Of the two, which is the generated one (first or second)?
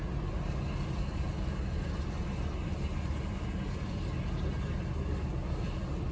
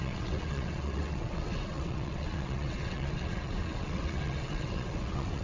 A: second